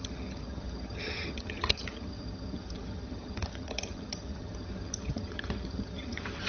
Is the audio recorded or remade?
remade